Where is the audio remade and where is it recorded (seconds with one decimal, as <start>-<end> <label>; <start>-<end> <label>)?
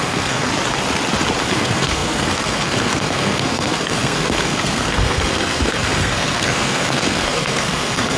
0.0-0.5 remade; 0.5-1.4 recorded; 1.4-8.2 remade